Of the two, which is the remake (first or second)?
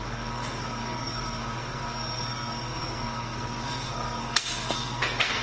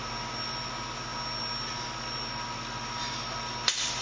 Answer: first